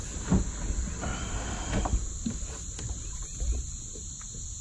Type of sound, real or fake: real